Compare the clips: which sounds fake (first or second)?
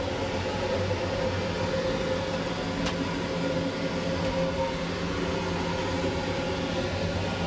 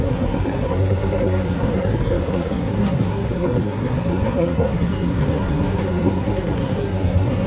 second